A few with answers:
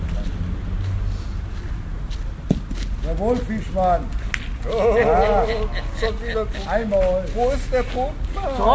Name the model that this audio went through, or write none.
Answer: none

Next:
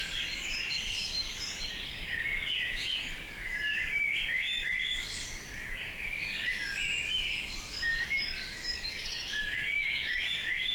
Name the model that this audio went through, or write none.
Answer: codec, DAC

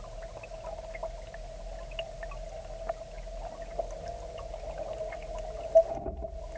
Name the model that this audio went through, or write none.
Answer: none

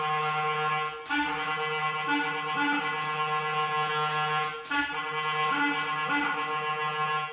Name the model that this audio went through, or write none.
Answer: none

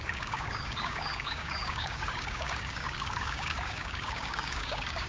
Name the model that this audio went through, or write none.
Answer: codec, DAC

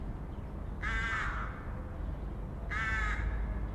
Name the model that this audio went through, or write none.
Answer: none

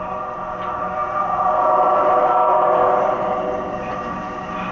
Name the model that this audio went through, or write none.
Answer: none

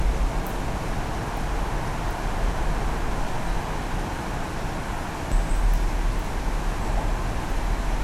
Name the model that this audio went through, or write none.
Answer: none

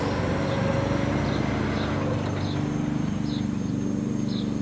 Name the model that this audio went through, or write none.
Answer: none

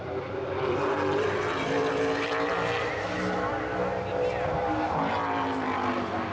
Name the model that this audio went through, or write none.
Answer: none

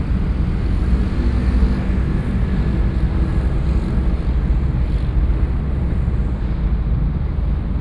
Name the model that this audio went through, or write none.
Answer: none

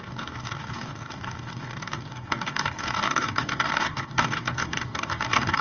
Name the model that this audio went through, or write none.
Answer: codec, DAC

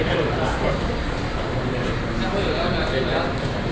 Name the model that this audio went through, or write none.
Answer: none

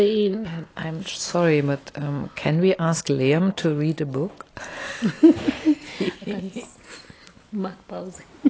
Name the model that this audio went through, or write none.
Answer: none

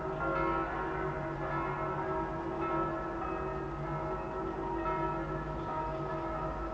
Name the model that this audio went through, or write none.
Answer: none